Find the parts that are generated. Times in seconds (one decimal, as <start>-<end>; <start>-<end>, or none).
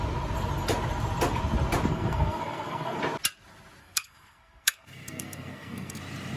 1.9-3.0; 3.8-6.0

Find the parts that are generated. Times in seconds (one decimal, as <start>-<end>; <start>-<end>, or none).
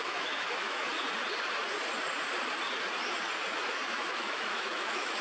0.0-0.9; 3.7-5.2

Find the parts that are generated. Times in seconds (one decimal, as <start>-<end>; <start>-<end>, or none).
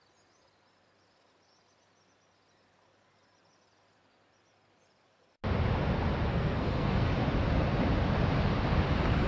6.3-7.1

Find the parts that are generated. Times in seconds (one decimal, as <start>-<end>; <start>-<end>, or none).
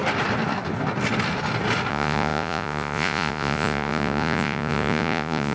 1.9-5.5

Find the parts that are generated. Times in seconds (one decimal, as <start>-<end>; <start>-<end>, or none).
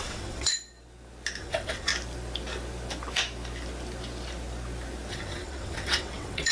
0.0-0.5; 1.4-1.9; 5.1-6.5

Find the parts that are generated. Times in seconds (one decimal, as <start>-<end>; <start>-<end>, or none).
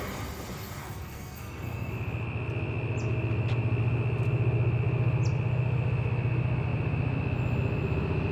0.8-1.9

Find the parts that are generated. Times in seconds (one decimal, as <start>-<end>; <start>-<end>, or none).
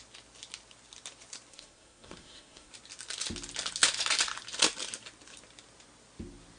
1.5-2.7